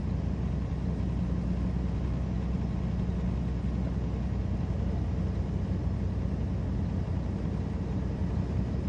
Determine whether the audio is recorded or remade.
recorded